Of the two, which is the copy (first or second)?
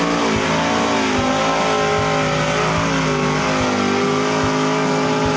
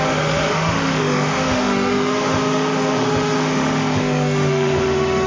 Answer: second